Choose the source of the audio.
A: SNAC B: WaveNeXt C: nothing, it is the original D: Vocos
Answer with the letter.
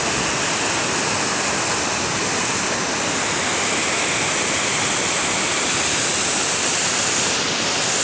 C